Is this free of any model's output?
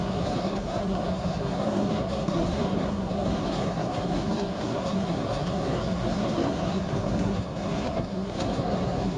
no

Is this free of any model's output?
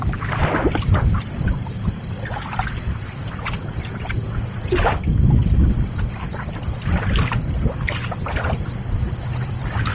yes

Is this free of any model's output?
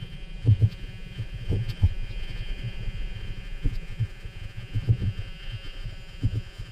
no